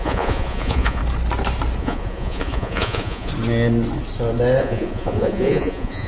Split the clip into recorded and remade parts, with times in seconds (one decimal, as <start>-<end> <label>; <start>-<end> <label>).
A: 0.0-1.0 remade; 1.0-1.8 recorded; 1.8-3.3 remade; 3.3-4.6 recorded; 4.6-6.1 remade